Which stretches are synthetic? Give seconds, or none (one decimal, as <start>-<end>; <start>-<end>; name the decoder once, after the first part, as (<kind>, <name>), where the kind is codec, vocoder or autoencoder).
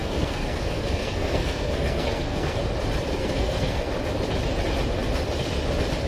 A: 0.0-2.6 (codec, SNAC); 3.2-3.9